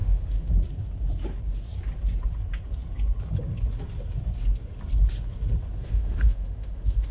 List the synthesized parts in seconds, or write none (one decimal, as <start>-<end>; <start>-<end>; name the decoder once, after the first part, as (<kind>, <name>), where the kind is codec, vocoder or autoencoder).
0.0-0.5 (autoencoder, DAC-VAE); 5.8-7.1